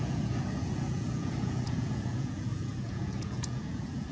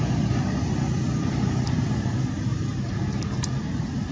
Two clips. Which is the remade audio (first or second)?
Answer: first